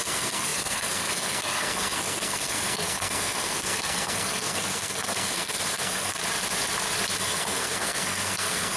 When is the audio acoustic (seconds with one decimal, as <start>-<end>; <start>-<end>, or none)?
6.2-7.2